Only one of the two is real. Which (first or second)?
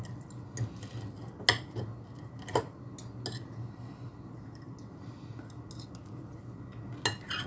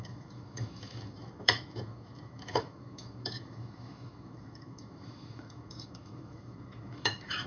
first